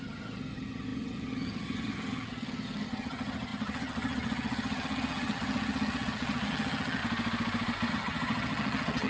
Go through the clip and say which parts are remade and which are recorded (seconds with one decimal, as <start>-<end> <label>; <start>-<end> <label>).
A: 0.0-7.0 remade; 7.0-7.9 recorded; 7.9-9.1 remade